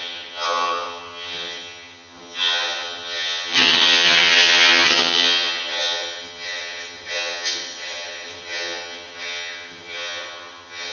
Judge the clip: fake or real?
fake